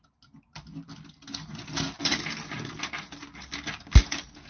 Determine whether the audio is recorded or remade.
recorded